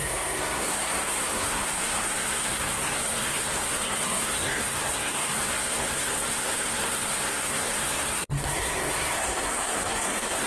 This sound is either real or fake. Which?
fake